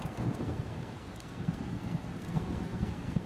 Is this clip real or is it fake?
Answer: fake